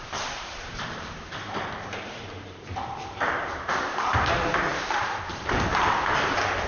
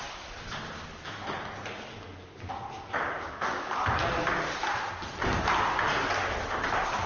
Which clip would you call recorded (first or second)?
second